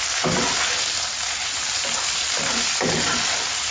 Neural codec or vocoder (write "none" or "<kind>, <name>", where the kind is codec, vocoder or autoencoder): none